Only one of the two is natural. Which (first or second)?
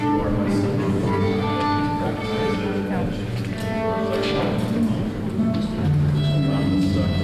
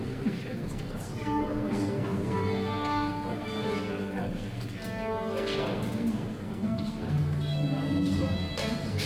first